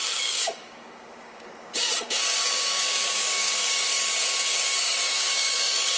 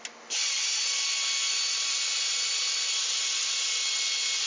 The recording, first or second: second